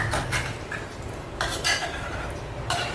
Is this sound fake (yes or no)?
no